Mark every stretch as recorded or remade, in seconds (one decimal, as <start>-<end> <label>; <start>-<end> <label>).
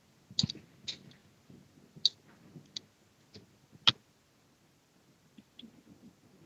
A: 0.0-6.5 recorded